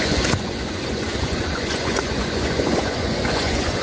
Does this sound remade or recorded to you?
remade